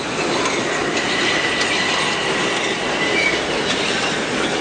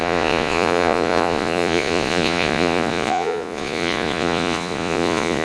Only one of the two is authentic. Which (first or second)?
first